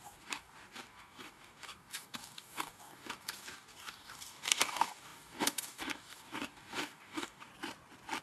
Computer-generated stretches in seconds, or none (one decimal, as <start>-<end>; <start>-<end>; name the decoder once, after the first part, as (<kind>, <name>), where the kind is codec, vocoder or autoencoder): 0.0-7.5 (codec, DAC)